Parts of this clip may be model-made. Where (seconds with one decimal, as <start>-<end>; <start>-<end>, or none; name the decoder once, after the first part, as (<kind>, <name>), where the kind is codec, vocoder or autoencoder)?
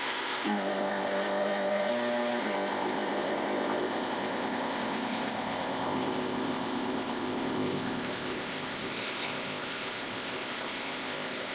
0.0-1.9 (codec, ZipCodec); 2.4-11.5